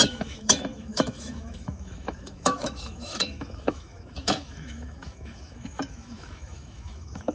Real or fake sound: fake